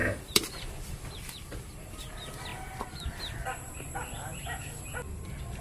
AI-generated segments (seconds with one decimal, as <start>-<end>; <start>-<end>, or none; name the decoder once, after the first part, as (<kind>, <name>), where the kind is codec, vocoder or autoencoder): 0.0-1.9 (vocoder, BigVGAN v2)